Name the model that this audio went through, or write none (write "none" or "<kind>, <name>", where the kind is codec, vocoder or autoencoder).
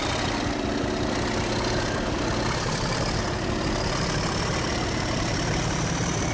vocoder, BigVGAN v2